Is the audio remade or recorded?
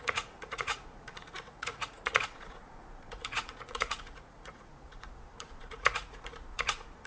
remade